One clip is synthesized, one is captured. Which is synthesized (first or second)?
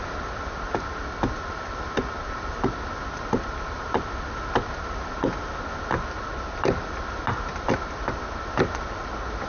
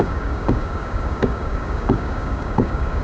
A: second